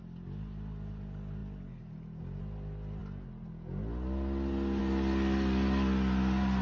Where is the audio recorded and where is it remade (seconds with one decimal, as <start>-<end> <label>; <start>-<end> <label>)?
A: 0.0-6.6 recorded